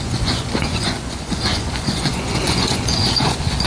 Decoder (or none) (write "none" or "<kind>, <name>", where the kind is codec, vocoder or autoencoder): vocoder, Vocos